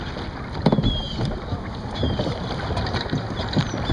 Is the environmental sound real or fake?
real